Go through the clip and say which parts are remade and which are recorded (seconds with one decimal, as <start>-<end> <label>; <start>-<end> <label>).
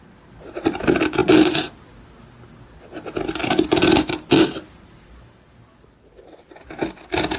0.0-7.4 recorded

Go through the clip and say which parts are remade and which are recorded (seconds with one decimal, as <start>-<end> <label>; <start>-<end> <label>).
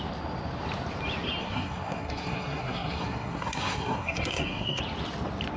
0.0-1.4 recorded; 1.4-4.8 remade; 4.8-5.6 recorded